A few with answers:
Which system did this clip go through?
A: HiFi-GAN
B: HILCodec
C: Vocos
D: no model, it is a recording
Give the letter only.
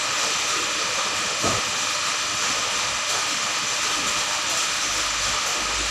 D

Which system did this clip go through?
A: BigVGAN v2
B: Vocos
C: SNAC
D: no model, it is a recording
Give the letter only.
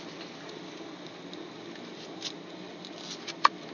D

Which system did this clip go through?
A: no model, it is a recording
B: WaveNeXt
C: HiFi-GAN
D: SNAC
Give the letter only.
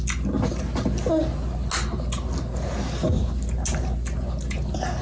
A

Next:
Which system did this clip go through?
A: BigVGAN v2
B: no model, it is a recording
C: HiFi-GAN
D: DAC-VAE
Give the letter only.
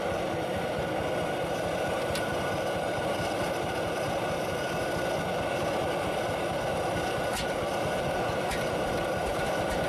B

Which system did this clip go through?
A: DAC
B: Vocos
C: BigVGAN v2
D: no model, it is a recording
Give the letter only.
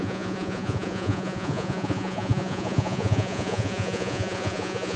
B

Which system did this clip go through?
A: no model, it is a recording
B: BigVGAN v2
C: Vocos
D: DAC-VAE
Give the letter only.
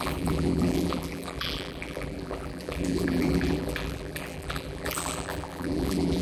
B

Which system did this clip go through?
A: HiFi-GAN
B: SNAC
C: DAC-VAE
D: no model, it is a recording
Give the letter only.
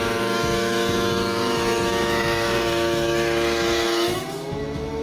C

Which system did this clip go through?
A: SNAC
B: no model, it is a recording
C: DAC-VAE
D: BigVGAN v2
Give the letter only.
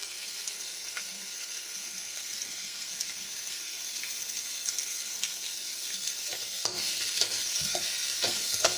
A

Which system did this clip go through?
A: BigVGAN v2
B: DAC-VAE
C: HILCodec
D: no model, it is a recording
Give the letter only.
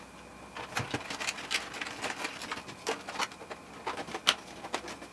D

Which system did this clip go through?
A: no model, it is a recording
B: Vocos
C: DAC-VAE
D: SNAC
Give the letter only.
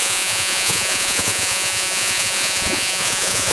B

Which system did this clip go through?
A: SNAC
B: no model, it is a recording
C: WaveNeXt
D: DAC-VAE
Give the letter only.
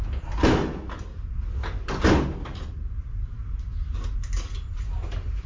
B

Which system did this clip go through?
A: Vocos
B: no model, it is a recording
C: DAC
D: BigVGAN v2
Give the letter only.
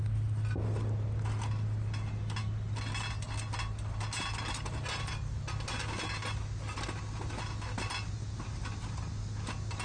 B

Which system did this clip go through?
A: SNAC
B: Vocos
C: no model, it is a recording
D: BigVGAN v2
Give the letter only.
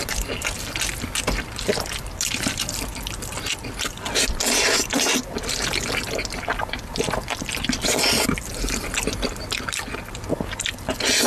C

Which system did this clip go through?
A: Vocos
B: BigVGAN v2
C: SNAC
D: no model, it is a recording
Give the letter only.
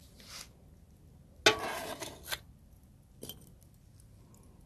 D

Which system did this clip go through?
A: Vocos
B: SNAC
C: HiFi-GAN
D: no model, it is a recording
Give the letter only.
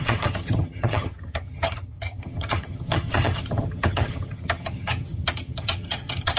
C